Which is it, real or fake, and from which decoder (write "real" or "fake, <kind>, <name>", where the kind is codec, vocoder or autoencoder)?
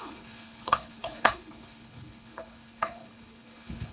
fake, codec, HILCodec